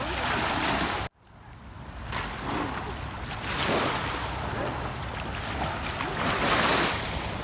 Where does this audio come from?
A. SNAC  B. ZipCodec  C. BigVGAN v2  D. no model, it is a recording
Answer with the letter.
D